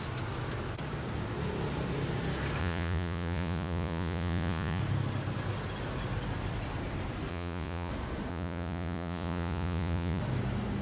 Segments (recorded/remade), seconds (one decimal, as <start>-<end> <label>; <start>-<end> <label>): 0.0-2.6 recorded; 2.6-4.8 remade; 4.8-7.3 recorded; 7.3-7.9 remade; 7.9-8.3 recorded; 8.3-10.2 remade; 10.2-10.8 recorded

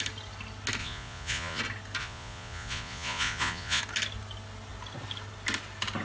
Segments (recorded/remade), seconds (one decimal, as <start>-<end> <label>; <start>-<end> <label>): 0.0-0.8 recorded; 0.8-1.6 remade; 1.6-2.0 recorded; 2.0-3.8 remade; 3.8-6.0 recorded

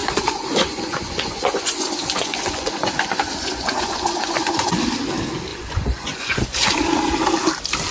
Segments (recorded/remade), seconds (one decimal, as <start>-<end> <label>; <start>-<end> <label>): 0.0-4.7 remade; 4.7-5.5 recorded; 5.5-6.7 remade; 6.7-7.9 recorded

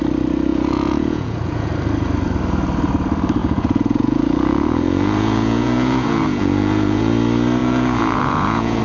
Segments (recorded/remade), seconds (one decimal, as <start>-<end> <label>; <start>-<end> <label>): 0.0-0.5 recorded; 0.5-1.7 remade; 1.7-3.4 recorded; 3.4-7.1 remade; 7.1-7.6 recorded; 7.6-8.8 remade

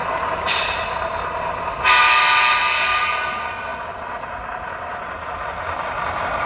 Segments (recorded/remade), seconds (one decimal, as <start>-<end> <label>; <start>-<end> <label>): 0.0-6.5 recorded